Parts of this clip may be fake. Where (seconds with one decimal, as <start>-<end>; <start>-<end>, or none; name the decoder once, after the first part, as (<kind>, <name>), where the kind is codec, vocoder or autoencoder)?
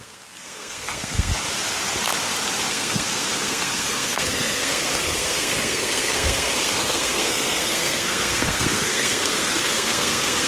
0.0-1.3 (codec, SNAC); 2.7-10.5